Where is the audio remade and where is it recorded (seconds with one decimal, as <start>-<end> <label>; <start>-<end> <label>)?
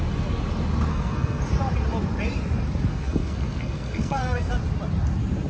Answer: 0.0-0.9 recorded; 0.9-1.4 remade; 1.4-2.9 recorded; 2.9-4.5 remade; 4.5-5.5 recorded